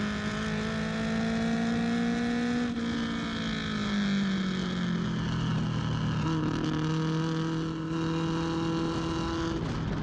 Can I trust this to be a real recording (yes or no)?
yes